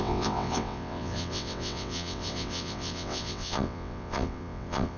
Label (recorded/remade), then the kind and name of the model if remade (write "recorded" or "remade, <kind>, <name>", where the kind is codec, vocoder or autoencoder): remade, vocoder, WaveNeXt